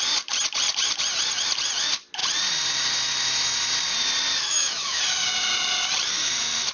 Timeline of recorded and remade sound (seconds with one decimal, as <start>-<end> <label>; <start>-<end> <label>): 0.0-4.4 recorded; 4.4-5.0 remade; 5.0-6.7 recorded